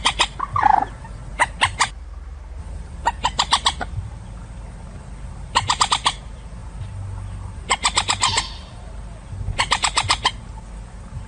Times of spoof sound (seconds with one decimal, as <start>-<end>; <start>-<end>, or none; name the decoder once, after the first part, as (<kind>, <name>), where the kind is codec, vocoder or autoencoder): none